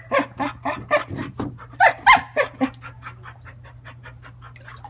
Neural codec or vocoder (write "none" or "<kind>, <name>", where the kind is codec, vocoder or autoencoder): none